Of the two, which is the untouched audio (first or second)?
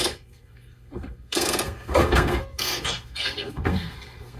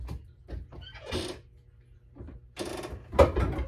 second